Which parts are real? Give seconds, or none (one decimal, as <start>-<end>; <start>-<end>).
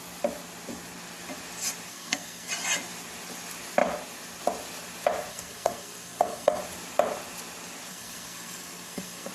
0.0-1.9; 2.5-5.3; 6.6-7.9